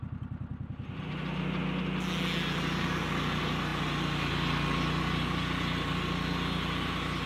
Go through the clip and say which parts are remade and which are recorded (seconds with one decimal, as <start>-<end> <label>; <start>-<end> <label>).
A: 0.0-7.3 recorded